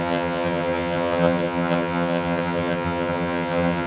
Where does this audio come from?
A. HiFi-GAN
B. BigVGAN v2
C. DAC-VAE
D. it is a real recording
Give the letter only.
A